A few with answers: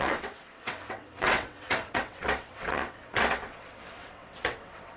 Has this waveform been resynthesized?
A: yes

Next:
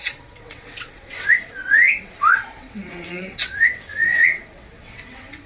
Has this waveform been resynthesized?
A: yes